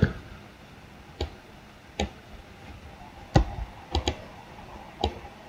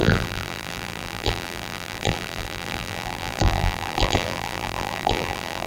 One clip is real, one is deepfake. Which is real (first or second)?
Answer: first